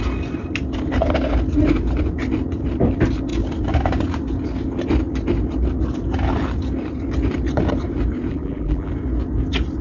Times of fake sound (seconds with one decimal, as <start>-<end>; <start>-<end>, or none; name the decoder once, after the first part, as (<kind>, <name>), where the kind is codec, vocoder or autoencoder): 8.3-8.9 (vocoder, BigVGAN v2)